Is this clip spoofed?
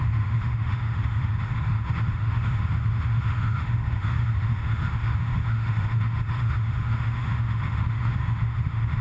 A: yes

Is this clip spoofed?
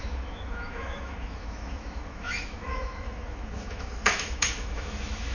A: yes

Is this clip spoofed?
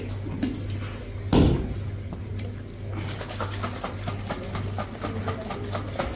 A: no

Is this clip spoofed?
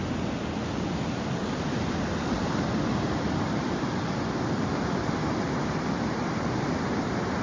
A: no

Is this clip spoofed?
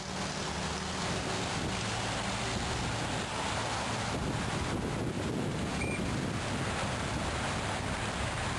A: no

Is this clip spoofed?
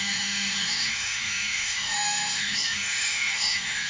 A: yes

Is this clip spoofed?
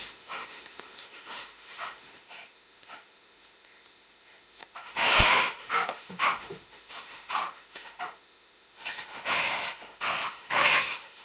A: yes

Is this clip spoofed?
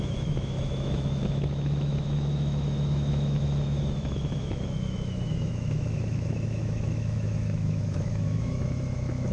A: yes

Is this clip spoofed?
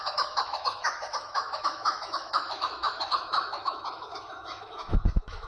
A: yes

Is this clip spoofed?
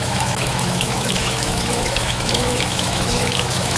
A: yes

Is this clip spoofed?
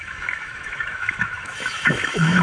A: yes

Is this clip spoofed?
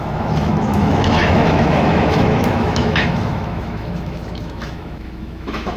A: yes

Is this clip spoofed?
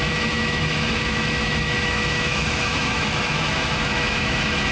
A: yes